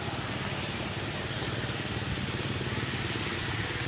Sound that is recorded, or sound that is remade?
recorded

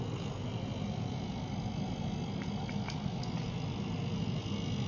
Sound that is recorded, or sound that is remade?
recorded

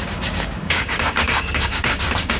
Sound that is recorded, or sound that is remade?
remade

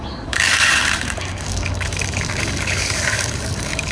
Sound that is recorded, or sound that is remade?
remade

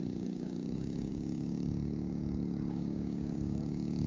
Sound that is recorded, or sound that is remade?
remade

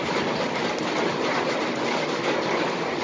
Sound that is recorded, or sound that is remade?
recorded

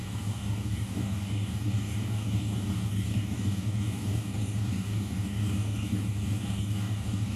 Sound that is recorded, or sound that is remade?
remade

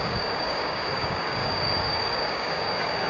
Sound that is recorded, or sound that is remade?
remade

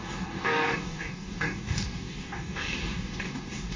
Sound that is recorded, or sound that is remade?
remade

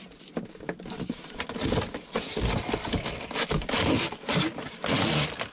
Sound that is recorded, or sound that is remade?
recorded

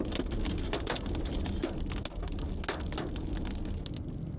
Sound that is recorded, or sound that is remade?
recorded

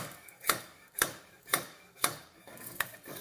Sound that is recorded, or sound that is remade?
remade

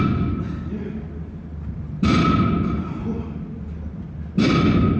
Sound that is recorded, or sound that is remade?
recorded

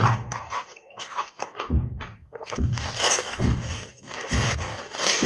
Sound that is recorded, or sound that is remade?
remade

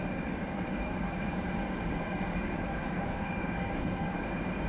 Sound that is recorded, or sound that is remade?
remade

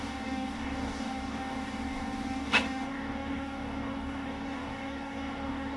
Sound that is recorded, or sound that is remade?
remade